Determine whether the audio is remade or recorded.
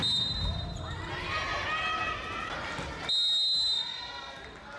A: recorded